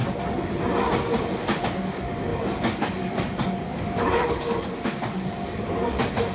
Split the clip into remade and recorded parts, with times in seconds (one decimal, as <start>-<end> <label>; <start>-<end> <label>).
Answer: 0.0-1.6 recorded; 1.6-6.3 remade